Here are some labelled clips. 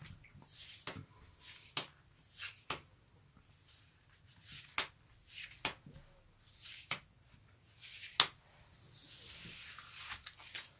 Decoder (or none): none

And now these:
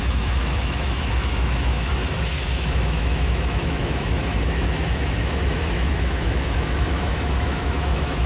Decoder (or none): autoencoder, DAC-VAE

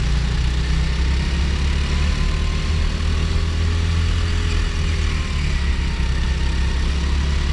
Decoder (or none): none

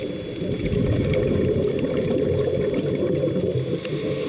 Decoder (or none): none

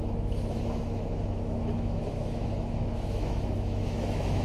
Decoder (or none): autoencoder, DAC-VAE